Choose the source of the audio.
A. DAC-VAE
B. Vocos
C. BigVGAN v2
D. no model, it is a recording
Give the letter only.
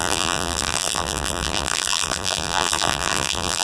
C